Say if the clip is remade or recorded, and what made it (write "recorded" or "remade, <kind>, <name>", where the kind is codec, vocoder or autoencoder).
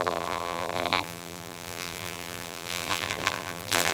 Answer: remade, vocoder, BigVGAN v2